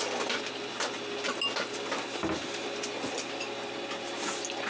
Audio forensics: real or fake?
real